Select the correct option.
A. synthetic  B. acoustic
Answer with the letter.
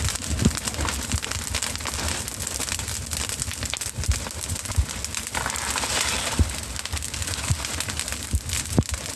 B